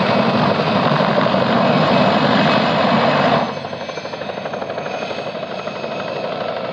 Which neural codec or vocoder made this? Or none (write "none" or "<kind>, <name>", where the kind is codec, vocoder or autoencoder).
none